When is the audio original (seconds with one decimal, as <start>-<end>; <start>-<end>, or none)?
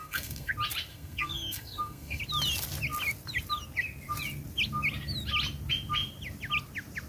0.5-0.9; 2.2-7.1